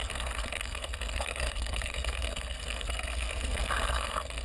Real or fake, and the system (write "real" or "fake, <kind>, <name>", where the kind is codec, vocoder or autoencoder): fake, codec, SNAC